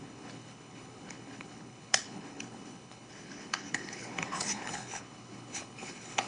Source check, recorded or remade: remade